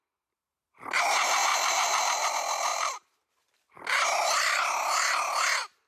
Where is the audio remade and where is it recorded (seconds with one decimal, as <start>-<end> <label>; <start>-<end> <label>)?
0.0-1.5 recorded; 1.5-2.3 remade; 2.3-2.7 recorded; 2.7-3.5 remade; 3.5-5.9 recorded